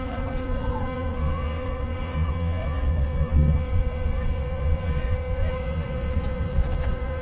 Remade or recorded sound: remade